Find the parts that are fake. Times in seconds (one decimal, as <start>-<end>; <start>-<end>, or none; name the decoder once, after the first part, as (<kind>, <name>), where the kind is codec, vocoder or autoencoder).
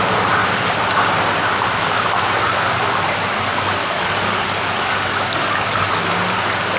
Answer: 3.8-5.9 (codec, DAC)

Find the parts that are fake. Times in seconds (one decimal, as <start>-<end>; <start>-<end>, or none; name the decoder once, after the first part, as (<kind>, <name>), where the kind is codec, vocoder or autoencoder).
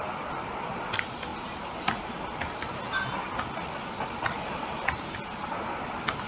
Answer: none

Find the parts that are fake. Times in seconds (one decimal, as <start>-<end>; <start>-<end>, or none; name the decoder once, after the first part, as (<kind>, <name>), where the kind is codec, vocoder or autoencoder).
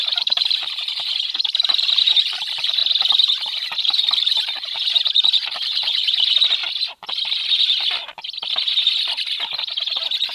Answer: 0.0-2.8 (vocoder, BigVGAN v2); 3.8-6.6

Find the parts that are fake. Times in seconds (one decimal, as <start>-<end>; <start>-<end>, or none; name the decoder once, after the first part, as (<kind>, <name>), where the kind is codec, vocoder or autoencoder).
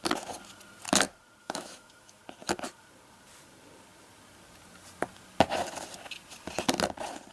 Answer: 1.4-2.2 (autoencoder, DAC-VAE)